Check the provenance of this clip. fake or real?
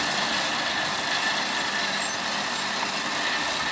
real